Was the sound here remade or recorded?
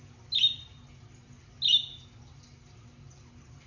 recorded